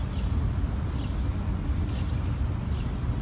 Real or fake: real